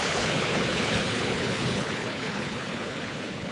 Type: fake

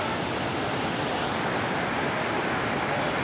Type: real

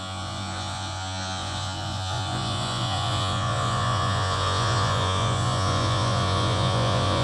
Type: fake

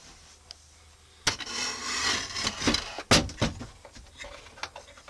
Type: real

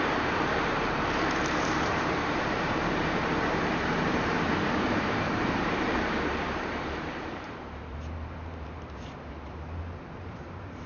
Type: fake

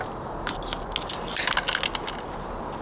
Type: real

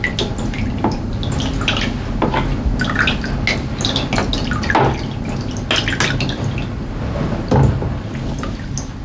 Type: real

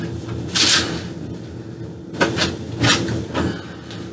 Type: real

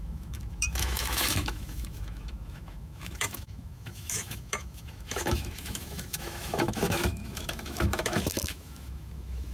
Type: fake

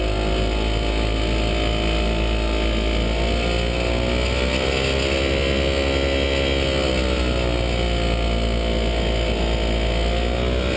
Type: real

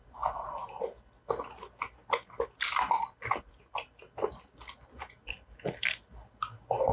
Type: real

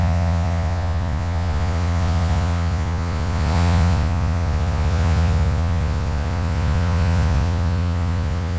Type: fake